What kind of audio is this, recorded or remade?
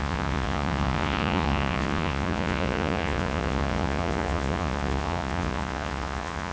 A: remade